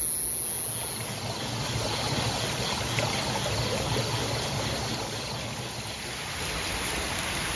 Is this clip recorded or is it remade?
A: recorded